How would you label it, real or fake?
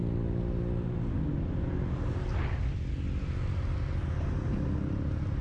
real